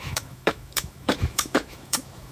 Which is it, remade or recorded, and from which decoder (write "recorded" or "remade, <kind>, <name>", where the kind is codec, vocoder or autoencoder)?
remade, autoencoder, DAC-VAE